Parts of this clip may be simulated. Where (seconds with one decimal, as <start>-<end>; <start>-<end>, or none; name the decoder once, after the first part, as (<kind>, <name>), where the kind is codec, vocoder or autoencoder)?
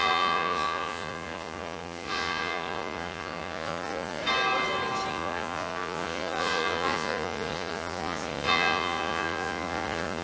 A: 0.0-4.2 (vocoder, Vocos); 5.1-10.2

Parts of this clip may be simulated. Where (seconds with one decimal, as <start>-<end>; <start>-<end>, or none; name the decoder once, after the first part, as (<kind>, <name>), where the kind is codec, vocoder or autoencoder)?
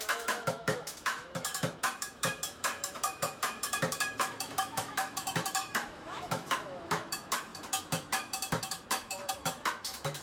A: 0.0-10.2 (autoencoder, DAC-VAE)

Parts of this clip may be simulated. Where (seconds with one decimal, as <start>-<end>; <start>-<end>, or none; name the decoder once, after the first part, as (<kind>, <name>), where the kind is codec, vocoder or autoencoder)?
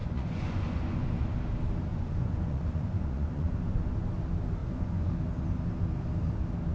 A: 0.0-1.1 (vocoder, Vocos); 1.9-3.5; 4.6-5.1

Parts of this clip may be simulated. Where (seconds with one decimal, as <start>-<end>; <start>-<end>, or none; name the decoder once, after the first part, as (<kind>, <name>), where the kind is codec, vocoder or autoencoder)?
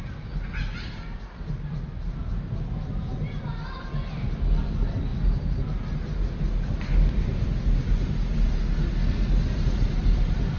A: none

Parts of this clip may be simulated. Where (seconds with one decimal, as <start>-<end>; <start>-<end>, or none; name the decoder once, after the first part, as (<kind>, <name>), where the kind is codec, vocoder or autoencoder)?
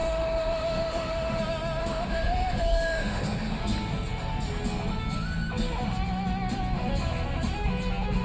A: 0.0-1.4 (autoencoder, DAC-VAE); 1.8-3.6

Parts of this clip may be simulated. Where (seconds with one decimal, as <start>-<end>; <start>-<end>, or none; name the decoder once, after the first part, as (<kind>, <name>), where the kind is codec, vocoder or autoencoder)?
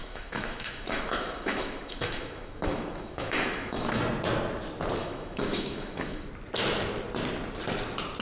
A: 0.0-4.0 (autoencoder, DAC-VAE); 5.0-6.3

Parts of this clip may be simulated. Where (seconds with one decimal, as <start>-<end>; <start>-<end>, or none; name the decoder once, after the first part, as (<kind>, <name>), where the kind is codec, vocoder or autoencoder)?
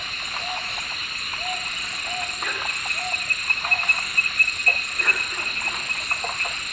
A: none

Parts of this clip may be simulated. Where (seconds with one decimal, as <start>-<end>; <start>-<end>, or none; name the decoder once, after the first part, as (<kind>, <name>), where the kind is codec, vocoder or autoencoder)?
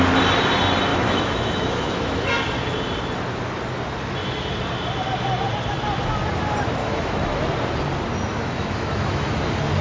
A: 0.9-2.3 (autoencoder, DAC-VAE); 6.8-7.4; 8.3-9.3